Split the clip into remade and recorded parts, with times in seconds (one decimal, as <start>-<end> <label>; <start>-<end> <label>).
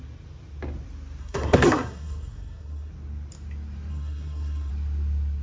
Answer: 0.0-1.2 recorded; 1.2-2.9 remade; 2.9-3.9 recorded; 3.9-4.7 remade; 4.7-5.4 recorded